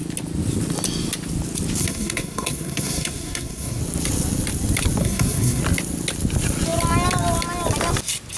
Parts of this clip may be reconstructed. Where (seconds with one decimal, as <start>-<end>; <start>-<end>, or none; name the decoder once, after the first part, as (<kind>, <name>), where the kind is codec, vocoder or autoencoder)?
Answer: 1.8-3.8 (codec, SNAC); 5.0-5.6